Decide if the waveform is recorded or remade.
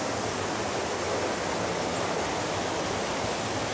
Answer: recorded